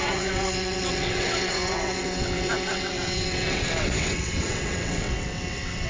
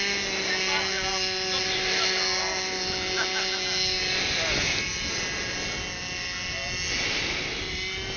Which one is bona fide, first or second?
second